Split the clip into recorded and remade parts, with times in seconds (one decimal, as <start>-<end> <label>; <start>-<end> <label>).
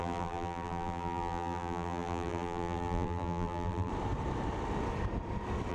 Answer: 0.0-3.9 remade; 3.9-5.7 recorded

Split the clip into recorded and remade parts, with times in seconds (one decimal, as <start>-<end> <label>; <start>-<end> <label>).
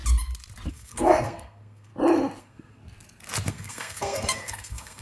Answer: 0.0-0.7 recorded; 0.7-1.9 remade; 1.9-2.4 recorded; 2.4-2.8 remade; 2.8-3.5 recorded; 3.5-5.0 remade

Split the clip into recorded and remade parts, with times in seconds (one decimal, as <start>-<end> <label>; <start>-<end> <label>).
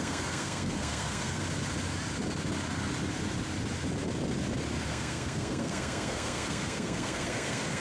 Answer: 0.0-1.4 remade; 1.4-4.9 recorded; 4.9-7.8 remade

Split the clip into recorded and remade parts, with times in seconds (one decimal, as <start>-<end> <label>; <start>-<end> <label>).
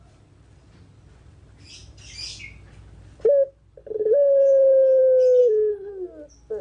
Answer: 0.0-3.8 recorded; 3.8-5.0 remade; 5.0-5.4 recorded; 5.4-5.9 remade; 5.9-6.6 recorded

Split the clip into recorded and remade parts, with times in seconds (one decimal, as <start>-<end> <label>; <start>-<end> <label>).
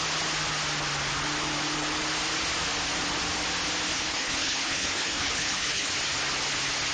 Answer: 0.0-3.9 recorded; 3.9-5.9 remade; 5.9-6.9 recorded